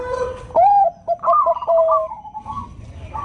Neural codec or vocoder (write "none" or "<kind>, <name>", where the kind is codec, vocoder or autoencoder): none